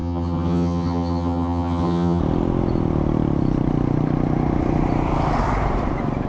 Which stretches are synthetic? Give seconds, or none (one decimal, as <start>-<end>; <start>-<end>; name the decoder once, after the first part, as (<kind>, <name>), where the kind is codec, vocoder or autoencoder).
0.0-2.2 (vocoder, HiFi-GAN)